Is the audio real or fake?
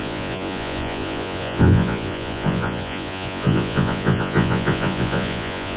fake